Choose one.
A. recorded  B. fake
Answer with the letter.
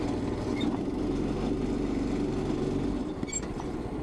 A